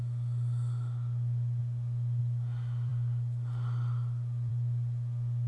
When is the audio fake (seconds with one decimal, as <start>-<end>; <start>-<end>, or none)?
none